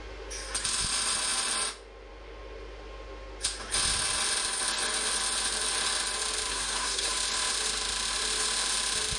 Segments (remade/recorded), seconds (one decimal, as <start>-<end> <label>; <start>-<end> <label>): 0.0-6.5 recorded; 6.5-7.1 remade; 7.1-9.2 recorded